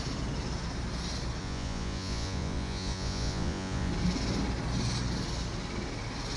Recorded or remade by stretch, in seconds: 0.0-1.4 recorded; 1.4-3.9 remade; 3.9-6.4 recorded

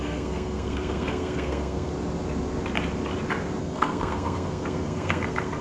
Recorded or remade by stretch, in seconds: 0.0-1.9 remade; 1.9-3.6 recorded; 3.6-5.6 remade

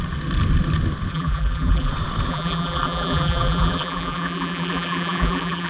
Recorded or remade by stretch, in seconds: 0.0-1.1 recorded; 1.1-1.9 remade; 1.9-2.3 recorded; 2.3-5.7 remade

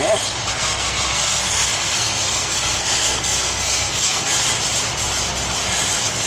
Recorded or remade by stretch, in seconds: 0.0-0.5 recorded; 0.5-4.3 remade; 4.3-6.3 recorded

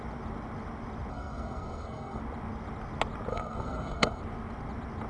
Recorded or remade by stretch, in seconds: 0.0-1.1 recorded; 1.1-2.2 remade; 2.2-3.3 recorded; 3.3-4.2 remade; 4.2-5.1 recorded

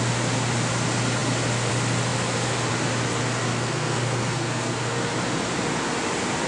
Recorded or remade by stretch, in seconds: 0.0-3.5 recorded; 3.5-5.0 remade; 5.0-6.5 recorded

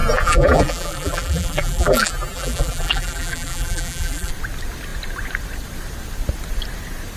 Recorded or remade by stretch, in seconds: 0.0-4.3 remade; 4.3-7.2 recorded

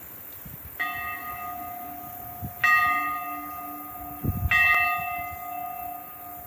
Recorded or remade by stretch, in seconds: 0.0-6.5 recorded